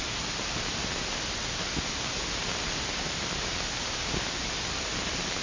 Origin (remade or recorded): recorded